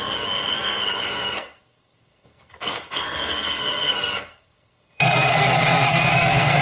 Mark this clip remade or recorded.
remade